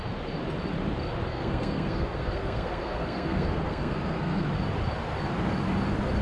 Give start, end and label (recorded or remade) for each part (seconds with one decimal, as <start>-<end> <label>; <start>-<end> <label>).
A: 0.0-1.3 recorded; 1.3-4.5 remade; 4.5-6.2 recorded